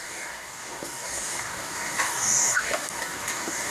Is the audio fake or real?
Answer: fake